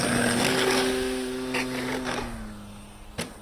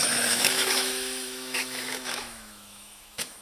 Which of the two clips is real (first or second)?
first